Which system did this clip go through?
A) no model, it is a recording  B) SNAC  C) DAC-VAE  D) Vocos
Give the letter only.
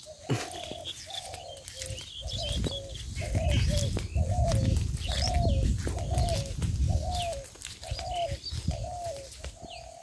A